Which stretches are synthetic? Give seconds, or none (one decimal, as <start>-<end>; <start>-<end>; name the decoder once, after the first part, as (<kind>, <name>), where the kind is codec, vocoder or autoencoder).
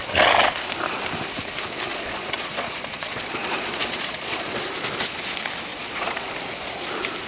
1.9-4.6 (vocoder, Vocos); 5.7-6.3